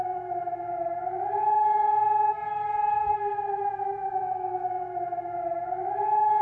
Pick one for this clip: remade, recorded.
remade